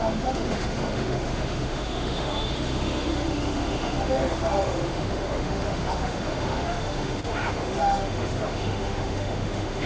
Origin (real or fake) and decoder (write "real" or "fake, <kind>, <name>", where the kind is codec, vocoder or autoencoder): fake, autoencoder, DAC-VAE